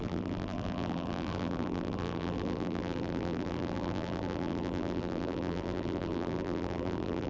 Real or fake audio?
fake